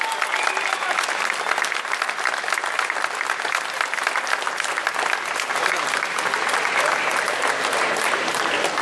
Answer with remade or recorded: recorded